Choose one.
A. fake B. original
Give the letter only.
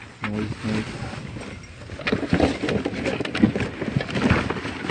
B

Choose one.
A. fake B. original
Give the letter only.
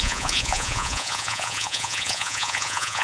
A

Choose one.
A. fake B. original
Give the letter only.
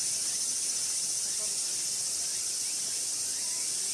B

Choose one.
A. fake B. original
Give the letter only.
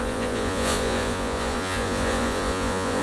A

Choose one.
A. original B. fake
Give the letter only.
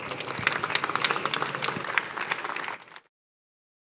A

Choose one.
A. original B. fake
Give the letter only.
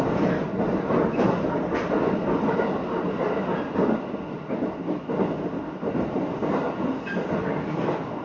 A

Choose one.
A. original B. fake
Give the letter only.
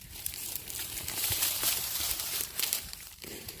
B